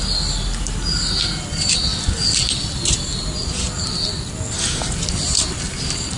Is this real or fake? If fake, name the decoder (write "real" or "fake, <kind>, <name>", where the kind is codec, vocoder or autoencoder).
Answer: real